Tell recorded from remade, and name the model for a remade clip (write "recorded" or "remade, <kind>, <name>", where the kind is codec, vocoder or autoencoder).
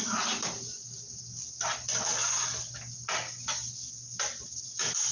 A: recorded